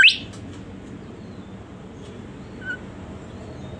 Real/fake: real